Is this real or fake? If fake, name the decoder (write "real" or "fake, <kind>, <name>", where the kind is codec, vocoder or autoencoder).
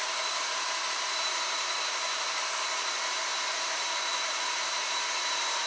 fake, vocoder, BigVGAN v2